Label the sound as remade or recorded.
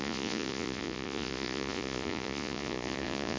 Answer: remade